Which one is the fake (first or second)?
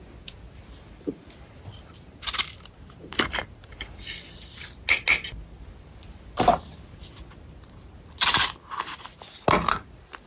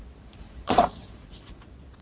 second